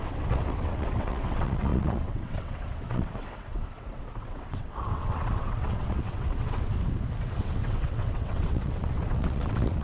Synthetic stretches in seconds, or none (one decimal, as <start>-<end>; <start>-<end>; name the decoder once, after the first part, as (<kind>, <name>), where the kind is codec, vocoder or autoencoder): 0.0-6.7 (vocoder, WaveNeXt); 7.4-9.8